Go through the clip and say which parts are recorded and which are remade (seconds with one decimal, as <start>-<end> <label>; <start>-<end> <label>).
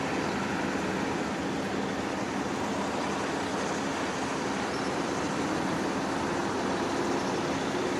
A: 0.0-8.0 recorded